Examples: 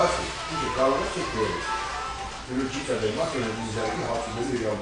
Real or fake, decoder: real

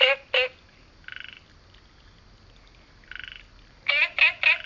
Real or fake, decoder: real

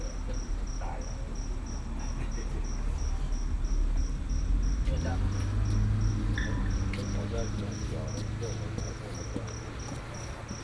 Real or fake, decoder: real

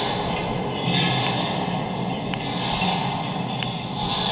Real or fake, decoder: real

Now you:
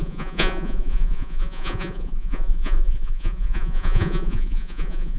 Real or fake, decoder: fake, vocoder, Vocos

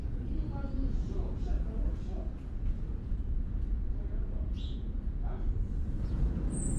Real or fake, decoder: fake, vocoder, Vocos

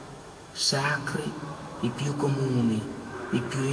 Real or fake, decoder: fake, autoencoder, DAC-VAE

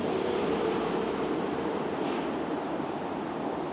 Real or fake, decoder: real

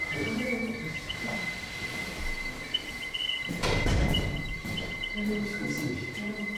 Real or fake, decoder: real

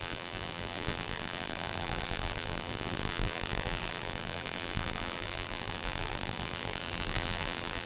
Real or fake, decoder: fake, vocoder, BigVGAN v2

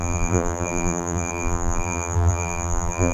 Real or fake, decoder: fake, vocoder, BigVGAN v2